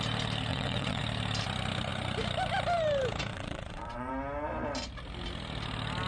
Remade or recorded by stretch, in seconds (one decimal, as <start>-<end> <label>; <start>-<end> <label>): 0.0-0.5 recorded; 0.5-1.0 remade; 1.0-3.3 recorded; 3.3-4.1 remade; 4.1-6.1 recorded